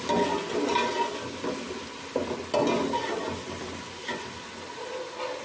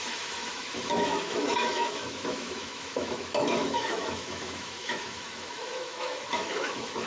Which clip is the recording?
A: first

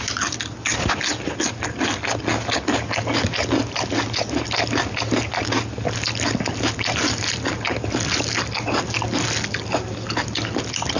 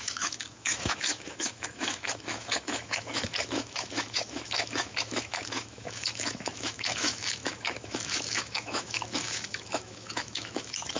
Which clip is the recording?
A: first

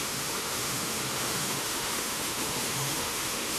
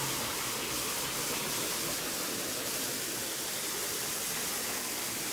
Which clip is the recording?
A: second